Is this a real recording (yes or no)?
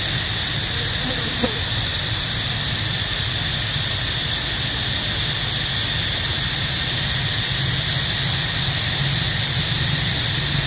yes